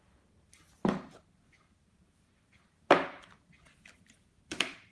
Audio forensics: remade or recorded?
recorded